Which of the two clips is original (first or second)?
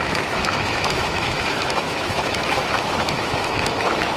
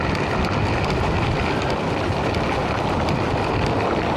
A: second